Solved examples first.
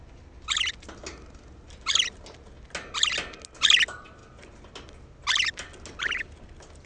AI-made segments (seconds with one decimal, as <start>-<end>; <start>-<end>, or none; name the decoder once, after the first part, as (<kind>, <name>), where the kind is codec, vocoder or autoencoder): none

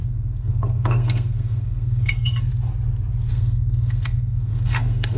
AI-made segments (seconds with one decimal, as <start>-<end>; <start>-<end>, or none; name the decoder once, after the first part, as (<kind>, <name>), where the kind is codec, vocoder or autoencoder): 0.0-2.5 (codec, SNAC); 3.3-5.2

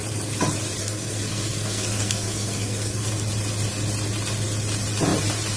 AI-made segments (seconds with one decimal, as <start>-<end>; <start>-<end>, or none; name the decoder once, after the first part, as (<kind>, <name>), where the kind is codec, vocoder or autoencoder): 0.8-3.1 (codec, SNAC)

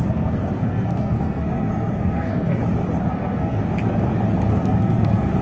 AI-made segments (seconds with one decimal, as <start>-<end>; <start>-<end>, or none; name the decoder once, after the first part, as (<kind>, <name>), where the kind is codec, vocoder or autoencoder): 0.0-2.6 (codec, SNAC); 3.1-3.6; 4.5-5.4

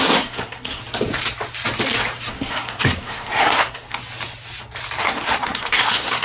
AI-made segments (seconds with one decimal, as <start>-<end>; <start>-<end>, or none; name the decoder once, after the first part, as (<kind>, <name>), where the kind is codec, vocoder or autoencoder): 0.0-0.8 (codec, SNAC); 2.3-4.0; 5.0-6.2

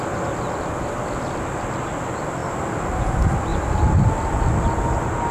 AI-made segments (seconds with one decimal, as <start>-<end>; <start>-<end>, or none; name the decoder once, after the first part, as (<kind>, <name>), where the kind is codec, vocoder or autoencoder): none

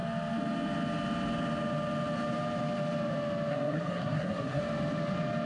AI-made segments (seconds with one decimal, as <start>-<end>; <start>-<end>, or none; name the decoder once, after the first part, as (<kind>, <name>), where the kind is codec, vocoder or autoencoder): 3.5-4.6 (codec, SNAC)

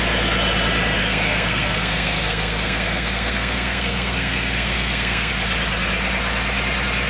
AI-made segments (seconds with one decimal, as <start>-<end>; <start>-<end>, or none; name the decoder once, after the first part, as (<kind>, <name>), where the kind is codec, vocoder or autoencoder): 1.0-5.3 (codec, SNAC)